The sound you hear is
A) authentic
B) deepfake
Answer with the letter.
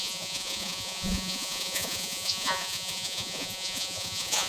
B